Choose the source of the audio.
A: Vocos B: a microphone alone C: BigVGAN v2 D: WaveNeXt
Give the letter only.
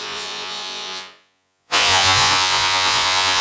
A